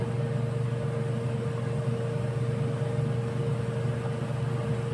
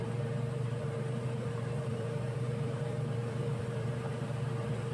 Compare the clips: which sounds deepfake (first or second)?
second